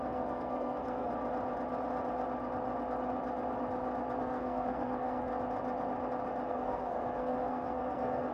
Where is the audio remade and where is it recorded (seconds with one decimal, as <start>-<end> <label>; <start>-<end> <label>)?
0.0-1.1 remade; 1.1-4.2 recorded; 4.2-5.3 remade; 5.3-6.5 recorded; 6.5-8.3 remade